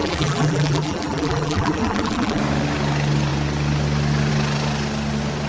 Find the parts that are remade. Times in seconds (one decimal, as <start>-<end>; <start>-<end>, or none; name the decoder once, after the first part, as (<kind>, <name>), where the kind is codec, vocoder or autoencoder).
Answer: 0.0-2.4 (vocoder, BigVGAN v2)